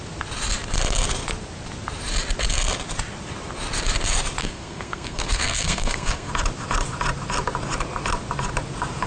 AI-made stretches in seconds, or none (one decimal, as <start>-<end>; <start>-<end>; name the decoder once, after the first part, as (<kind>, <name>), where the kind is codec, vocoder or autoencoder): 4.4-6.3 (codec, SNAC)